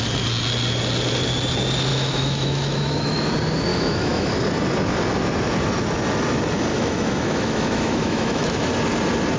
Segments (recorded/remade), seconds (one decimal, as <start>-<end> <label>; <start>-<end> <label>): 0.0-1.9 recorded; 1.9-3.3 remade; 3.3-3.7 recorded; 3.7-4.3 remade; 4.3-6.7 recorded; 6.7-8.7 remade; 8.7-9.4 recorded